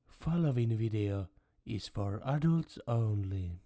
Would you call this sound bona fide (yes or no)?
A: yes